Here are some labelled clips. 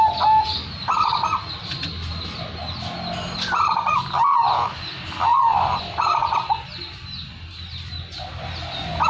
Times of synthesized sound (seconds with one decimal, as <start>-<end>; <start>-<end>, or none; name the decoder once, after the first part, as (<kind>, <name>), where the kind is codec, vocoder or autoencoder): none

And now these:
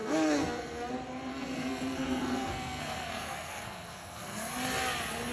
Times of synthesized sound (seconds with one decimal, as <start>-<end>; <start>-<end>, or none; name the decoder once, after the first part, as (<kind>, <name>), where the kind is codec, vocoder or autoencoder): 0.0-0.9 (codec, SNAC); 1.3-4.5

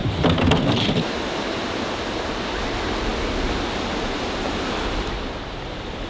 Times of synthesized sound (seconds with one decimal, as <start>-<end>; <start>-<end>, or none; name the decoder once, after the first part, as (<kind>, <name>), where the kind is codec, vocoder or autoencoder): none

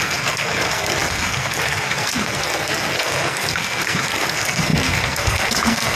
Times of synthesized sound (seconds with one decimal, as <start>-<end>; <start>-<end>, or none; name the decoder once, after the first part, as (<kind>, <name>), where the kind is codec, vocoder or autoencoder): 0.0-6.0 (codec, SNAC)

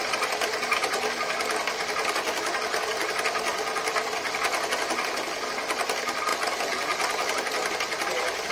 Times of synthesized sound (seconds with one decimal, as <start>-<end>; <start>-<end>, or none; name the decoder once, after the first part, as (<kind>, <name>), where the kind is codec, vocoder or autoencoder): none

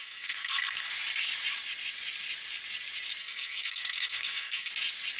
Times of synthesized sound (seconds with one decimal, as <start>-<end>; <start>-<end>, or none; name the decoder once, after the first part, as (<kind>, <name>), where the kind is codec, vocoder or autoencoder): 0.0-0.9 (codec, SNAC); 3.2-4.7

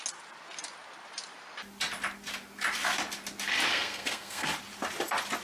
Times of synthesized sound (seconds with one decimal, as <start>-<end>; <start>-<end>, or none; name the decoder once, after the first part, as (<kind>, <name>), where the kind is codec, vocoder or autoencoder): 3.7-4.5 (codec, SNAC)

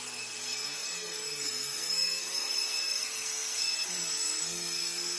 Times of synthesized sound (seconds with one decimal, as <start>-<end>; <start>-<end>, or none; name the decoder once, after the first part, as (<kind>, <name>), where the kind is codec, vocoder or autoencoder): 0.0-5.2 (codec, SNAC)